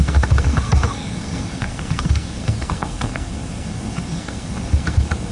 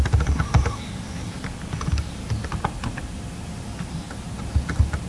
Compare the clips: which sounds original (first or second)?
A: second